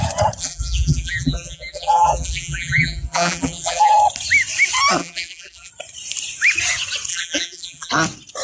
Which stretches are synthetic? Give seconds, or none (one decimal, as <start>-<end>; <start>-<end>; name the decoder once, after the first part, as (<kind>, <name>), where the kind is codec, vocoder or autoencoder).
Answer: 0.4-3.9 (vocoder, BigVGAN v2); 5.0-5.7; 7.1-7.9